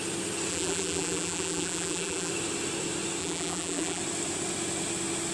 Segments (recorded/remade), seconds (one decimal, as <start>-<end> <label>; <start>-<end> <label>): 0.0-0.5 recorded; 0.5-2.3 remade; 2.3-3.2 recorded; 3.2-4.0 remade; 4.0-5.3 recorded